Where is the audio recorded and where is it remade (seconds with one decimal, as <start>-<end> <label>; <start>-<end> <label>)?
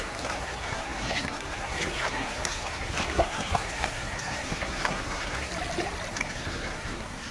0.0-5.5 remade; 5.5-6.1 recorded; 6.1-7.3 remade